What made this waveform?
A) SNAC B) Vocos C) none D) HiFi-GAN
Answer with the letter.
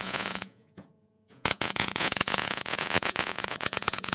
B